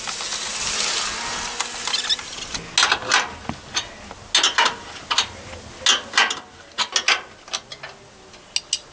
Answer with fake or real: real